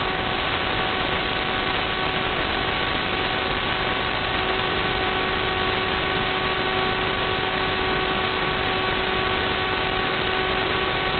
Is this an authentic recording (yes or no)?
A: yes